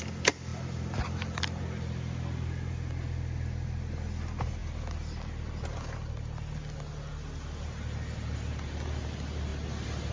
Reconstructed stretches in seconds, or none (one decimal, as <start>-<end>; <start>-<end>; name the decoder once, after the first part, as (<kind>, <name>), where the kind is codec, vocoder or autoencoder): 0.5-1.6 (vocoder, BigVGAN v2)